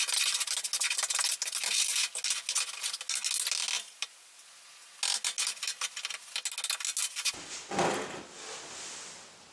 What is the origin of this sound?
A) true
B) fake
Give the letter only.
A